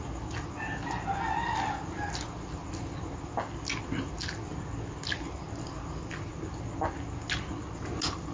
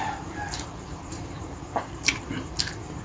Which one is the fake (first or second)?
second